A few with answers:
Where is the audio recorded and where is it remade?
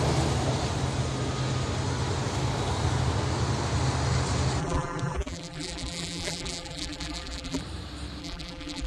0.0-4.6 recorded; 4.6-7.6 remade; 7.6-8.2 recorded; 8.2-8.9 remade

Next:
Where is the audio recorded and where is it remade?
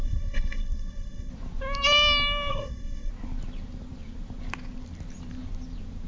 0.0-1.3 remade; 1.3-2.5 recorded; 2.5-3.1 remade; 3.1-6.1 recorded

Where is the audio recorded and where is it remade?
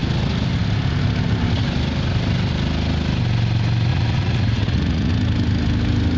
0.0-3.9 recorded; 3.9-5.1 remade; 5.1-6.2 recorded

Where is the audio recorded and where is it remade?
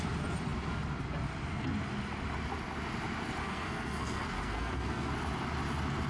0.0-3.4 recorded; 3.4-5.1 remade; 5.1-6.1 recorded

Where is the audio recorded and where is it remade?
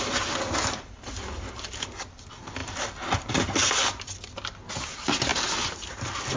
0.0-6.4 recorded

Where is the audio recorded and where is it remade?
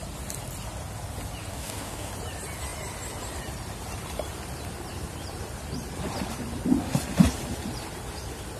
0.0-1.5 recorded; 1.5-2.1 remade; 2.1-8.6 recorded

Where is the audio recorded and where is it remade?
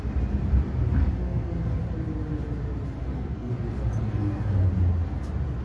0.0-1.0 recorded; 1.0-1.5 remade; 1.5-3.0 recorded; 3.0-3.5 remade; 3.5-4.0 recorded; 4.0-4.7 remade; 4.7-5.6 recorded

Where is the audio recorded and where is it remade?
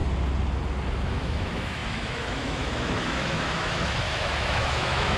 0.0-1.1 recorded; 1.1-5.2 remade